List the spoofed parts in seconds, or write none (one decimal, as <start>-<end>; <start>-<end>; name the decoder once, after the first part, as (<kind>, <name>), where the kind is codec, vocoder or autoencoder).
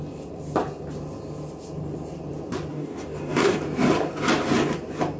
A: 2.7-3.6 (codec, DAC)